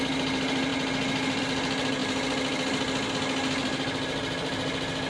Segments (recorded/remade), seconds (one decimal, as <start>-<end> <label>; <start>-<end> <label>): 0.0-5.1 recorded